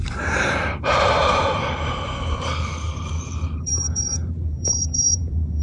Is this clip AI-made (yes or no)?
yes